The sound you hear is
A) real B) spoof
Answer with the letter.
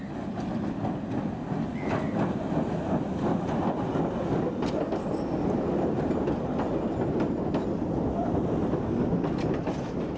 A